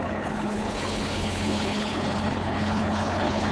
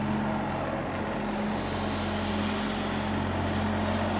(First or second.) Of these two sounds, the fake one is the first